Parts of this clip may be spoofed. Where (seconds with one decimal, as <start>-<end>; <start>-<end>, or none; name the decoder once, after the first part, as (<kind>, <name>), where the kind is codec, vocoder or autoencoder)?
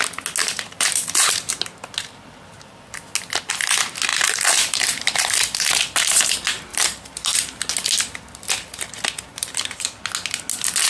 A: 0.4-1.5 (vocoder, BigVGAN v2); 4.1-5.7; 6.7-7.7; 9.3-9.9